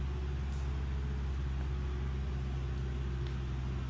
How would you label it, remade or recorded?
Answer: recorded